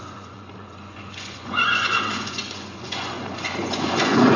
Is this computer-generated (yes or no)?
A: yes